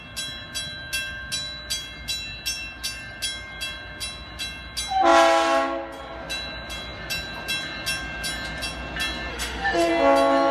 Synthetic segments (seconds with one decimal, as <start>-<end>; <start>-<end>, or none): 9.3-9.9